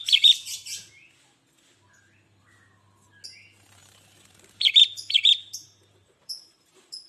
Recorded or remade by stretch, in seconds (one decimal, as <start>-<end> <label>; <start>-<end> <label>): 0.0-0.9 remade; 0.9-3.8 recorded; 3.8-7.1 remade